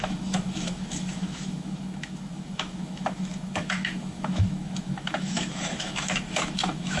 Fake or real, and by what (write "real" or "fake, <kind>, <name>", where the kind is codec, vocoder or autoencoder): fake, autoencoder, DAC-VAE